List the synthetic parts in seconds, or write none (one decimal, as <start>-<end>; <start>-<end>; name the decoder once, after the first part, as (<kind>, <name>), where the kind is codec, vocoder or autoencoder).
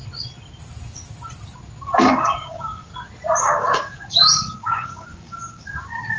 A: 2.0-2.9 (codec, DAC); 3.4-6.2